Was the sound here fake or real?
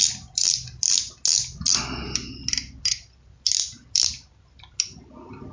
real